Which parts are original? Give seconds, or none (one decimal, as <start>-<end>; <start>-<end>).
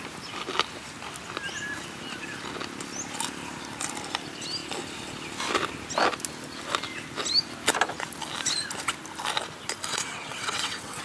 0.0-9.9